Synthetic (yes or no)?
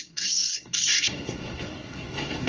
yes